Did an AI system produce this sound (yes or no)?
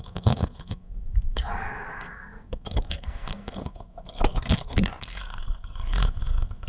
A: yes